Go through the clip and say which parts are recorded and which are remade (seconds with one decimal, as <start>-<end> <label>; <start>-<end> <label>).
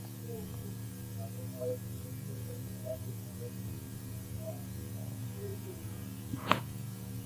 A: 0.0-7.3 remade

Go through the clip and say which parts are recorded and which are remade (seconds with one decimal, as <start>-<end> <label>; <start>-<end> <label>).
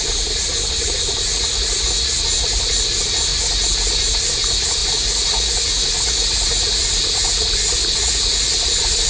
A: 0.0-1.3 recorded; 1.3-2.2 remade; 2.2-4.8 recorded; 4.8-6.8 remade; 6.8-7.8 recorded; 7.8-8.6 remade; 8.6-9.1 recorded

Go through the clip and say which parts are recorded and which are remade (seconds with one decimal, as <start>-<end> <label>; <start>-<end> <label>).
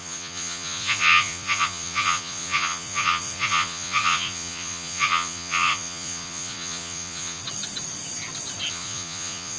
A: 0.0-7.4 remade; 7.4-8.7 recorded; 8.7-9.6 remade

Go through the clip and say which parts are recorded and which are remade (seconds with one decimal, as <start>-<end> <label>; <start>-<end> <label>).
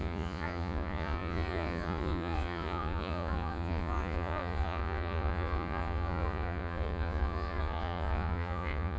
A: 0.0-9.0 remade